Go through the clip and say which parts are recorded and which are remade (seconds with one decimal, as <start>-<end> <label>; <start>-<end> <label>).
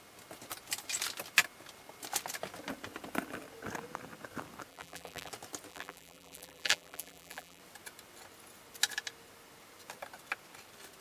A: 0.0-4.7 recorded; 4.7-5.3 remade; 5.3-5.7 recorded; 5.7-7.6 remade; 7.6-11.0 recorded